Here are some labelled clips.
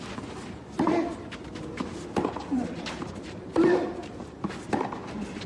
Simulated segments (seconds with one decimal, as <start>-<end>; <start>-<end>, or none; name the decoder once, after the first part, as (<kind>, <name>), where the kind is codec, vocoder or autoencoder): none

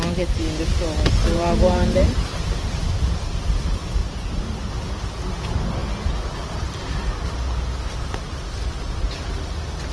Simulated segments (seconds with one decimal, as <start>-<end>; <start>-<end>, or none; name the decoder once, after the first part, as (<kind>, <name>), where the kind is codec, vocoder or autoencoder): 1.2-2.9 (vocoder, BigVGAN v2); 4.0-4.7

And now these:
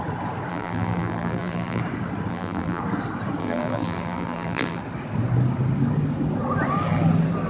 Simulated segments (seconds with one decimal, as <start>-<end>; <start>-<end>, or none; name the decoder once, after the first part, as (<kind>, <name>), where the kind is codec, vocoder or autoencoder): 0.5-1.8 (vocoder, BigVGAN v2); 2.3-2.8; 3.4-4.8

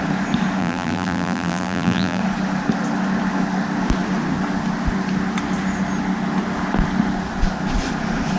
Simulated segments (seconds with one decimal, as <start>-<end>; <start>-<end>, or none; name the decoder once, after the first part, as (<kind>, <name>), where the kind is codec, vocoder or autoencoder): 0.6-2.2 (vocoder, BigVGAN v2)

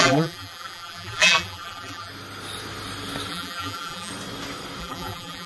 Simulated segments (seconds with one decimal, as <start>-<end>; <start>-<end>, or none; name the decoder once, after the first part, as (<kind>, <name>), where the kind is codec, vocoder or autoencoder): 0.0-2.1 (vocoder, BigVGAN v2); 3.3-4.1; 4.8-5.5

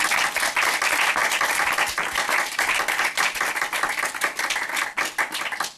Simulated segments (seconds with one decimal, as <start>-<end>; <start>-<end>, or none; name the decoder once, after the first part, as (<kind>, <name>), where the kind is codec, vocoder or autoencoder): 1.2-4.7 (vocoder, BigVGAN v2)